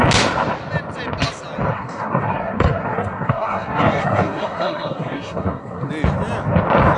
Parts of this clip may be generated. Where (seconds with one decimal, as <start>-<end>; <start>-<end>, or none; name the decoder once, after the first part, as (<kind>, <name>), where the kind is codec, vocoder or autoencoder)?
1.7-5.9 (codec, SNAC)